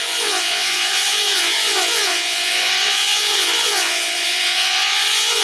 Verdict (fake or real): fake